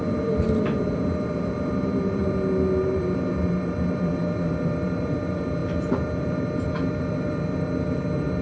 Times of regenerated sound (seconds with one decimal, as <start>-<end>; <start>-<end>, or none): 0.0-2.2; 2.8-8.4